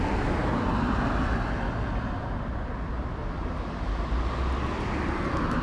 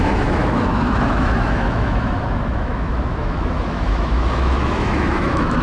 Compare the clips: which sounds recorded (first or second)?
first